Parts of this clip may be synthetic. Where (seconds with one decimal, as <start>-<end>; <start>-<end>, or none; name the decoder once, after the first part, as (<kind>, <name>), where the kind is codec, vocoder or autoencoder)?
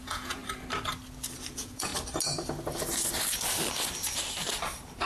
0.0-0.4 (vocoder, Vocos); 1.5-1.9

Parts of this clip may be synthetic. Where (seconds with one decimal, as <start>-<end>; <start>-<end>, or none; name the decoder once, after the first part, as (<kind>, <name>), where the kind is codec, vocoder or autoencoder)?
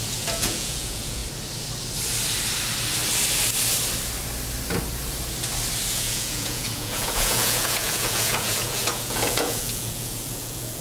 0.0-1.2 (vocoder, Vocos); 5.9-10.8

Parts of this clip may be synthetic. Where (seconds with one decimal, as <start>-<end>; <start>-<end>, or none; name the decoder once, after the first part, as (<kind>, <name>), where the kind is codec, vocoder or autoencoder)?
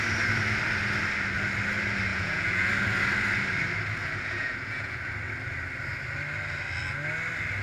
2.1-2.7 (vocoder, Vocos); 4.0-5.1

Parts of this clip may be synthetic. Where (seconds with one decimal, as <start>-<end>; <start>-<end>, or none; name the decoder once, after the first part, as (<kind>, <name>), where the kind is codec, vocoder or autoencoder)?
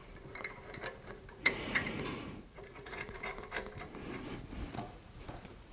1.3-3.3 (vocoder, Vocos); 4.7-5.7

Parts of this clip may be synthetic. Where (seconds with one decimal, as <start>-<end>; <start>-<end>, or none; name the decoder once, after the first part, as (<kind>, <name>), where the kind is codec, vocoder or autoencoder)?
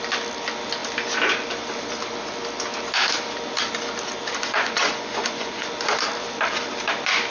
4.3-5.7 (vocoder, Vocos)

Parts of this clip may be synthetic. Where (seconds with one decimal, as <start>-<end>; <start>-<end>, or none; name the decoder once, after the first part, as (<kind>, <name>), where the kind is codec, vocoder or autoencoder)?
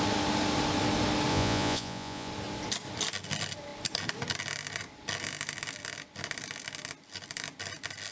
1.3-2.3 (vocoder, Vocos)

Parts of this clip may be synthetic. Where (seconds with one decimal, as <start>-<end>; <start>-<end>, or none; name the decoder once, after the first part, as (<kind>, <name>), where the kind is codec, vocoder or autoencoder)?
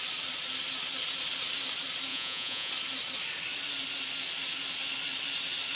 2.1-2.7 (vocoder, Vocos)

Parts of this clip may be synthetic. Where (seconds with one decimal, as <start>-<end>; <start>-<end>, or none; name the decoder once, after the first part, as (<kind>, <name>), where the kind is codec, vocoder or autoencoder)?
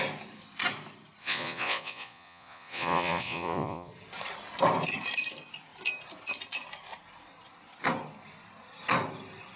1.2-3.9 (vocoder, Vocos)